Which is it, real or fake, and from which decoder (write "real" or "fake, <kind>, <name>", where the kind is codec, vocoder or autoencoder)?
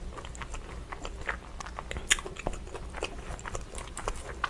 real